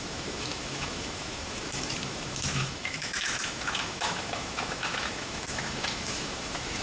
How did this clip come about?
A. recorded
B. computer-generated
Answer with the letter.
B